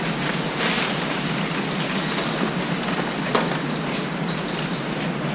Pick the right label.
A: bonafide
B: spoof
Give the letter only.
A